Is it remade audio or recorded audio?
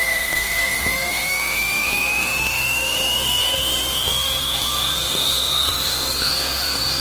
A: remade